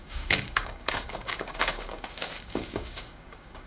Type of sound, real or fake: fake